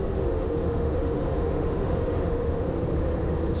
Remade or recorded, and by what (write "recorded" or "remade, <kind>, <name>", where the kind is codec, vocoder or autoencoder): remade, autoencoder, DAC-VAE